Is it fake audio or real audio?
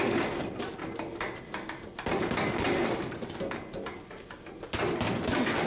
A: real